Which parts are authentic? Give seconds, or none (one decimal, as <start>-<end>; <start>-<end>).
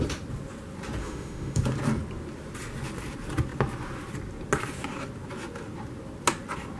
0.0-1.0; 1.6-6.8